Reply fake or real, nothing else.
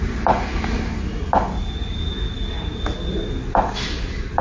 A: real